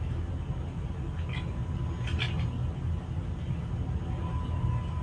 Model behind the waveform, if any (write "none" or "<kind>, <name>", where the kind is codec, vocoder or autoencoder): none